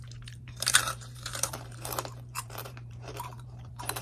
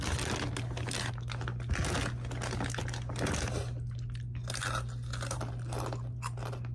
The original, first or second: second